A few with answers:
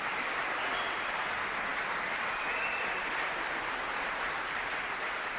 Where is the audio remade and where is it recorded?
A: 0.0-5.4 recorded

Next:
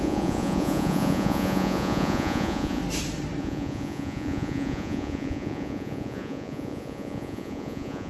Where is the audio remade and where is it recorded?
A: 0.0-2.8 remade; 2.8-3.4 recorded; 3.4-8.1 remade

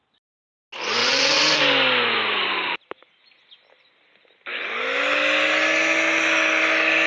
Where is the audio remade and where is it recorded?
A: 0.0-1.0 recorded; 1.0-1.6 remade; 1.6-7.1 recorded

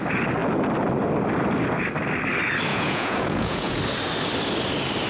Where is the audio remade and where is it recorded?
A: 0.0-2.7 recorded; 2.7-3.8 remade; 3.8-5.1 recorded

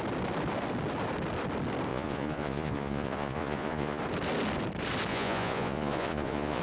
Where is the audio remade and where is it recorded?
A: 0.0-1.9 recorded; 1.9-4.0 remade; 4.0-5.1 recorded; 5.1-6.6 remade

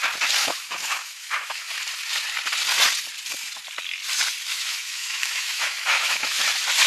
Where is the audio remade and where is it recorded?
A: 0.0-0.4 recorded; 0.4-1.7 remade; 1.7-4.5 recorded; 4.5-6.4 remade; 6.4-6.9 recorded